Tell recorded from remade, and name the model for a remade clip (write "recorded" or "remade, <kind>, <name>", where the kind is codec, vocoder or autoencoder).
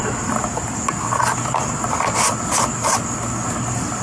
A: recorded